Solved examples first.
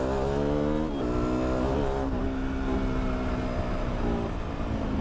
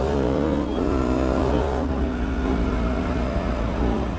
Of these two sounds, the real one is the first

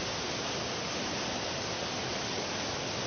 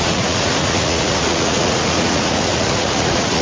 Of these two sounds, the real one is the first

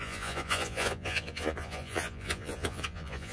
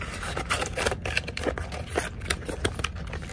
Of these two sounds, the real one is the second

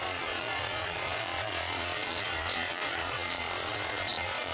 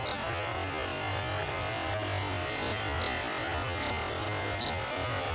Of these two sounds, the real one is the second